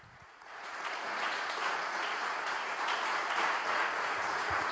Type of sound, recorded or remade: remade